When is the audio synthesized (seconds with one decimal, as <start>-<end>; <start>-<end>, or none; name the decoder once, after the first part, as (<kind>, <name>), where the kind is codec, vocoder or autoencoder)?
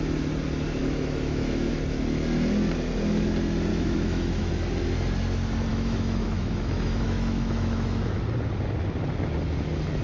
0.8-1.7 (autoencoder, DAC-VAE); 3.7-4.5; 5.7-8.2